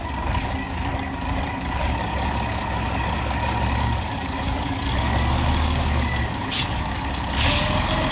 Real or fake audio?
fake